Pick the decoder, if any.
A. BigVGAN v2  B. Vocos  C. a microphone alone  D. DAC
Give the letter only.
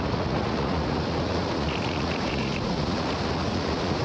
B